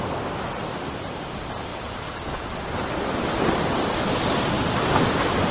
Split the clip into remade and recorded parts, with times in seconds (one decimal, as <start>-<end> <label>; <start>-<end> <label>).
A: 0.0-5.5 recorded